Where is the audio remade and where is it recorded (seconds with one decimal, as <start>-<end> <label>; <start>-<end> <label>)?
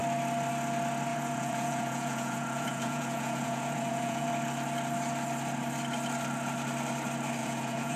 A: 0.0-1.1 recorded; 1.1-4.3 remade; 4.3-7.4 recorded; 7.4-8.0 remade